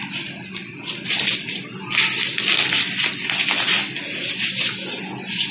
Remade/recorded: recorded